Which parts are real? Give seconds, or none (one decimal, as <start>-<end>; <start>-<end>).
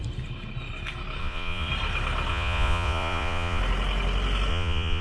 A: 0.0-1.2; 1.7-2.3; 3.6-4.5